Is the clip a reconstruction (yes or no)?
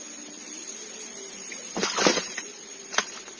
no